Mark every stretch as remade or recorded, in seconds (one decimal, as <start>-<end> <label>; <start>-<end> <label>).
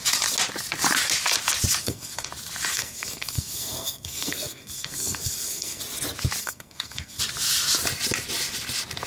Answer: 0.0-1.8 recorded; 1.8-2.3 remade; 2.3-2.7 recorded; 2.7-5.8 remade; 5.8-6.4 recorded; 6.4-7.2 remade; 7.2-9.1 recorded